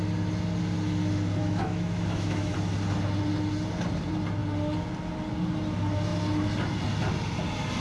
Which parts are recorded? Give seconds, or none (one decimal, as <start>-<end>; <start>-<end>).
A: 0.0-1.4; 2.5-7.8